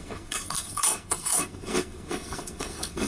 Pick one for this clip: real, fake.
fake